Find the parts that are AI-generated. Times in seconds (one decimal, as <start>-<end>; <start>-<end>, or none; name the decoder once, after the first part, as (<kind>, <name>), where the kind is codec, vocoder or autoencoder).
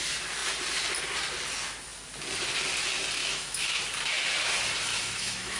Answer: 3.2-3.8 (autoencoder, DAC-VAE); 4.9-5.6